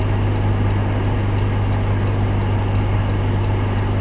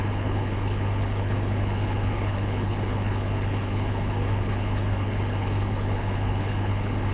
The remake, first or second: second